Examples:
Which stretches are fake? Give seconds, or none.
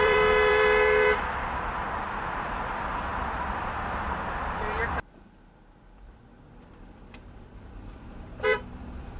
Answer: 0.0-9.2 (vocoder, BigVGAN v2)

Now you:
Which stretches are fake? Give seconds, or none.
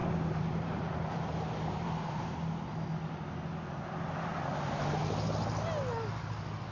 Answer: 0.0-2.5 (vocoder, BigVGAN v2); 4.3-5.0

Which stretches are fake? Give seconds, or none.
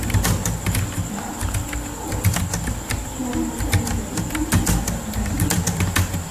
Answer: none